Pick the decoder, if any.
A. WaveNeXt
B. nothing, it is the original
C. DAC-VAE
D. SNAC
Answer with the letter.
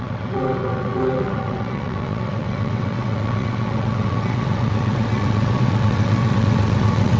A